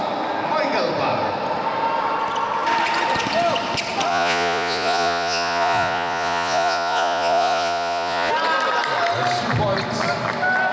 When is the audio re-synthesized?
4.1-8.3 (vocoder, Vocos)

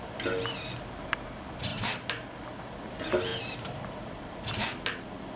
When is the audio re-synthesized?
none

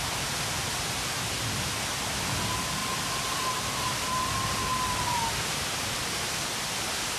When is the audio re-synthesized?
none

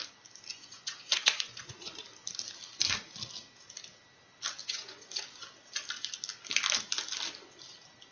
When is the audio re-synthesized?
0.5-2.0 (vocoder, Vocos); 4.6-5.2

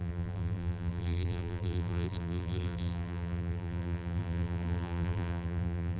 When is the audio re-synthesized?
0.0-6.0 (vocoder, BigVGAN v2)

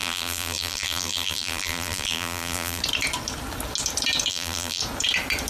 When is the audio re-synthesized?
0.0-2.8 (vocoder, BigVGAN v2); 4.3-4.8